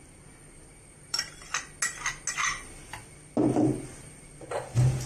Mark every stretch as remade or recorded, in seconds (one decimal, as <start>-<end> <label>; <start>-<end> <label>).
0.0-0.7 recorded; 0.7-1.4 remade; 1.4-5.1 recorded